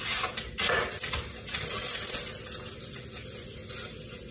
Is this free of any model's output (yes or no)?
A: yes